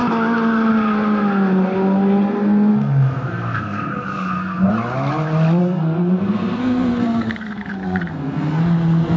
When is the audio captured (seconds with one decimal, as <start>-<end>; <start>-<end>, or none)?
0.0-2.7; 4.7-5.6; 8.6-9.2